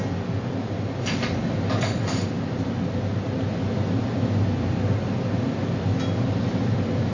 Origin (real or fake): real